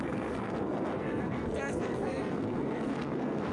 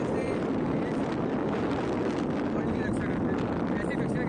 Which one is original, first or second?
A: second